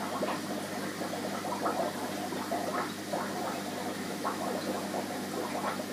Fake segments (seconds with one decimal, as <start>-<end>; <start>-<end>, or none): 3.8-4.5